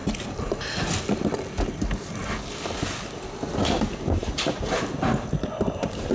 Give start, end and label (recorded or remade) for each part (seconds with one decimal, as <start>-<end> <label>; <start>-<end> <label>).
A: 0.0-6.1 recorded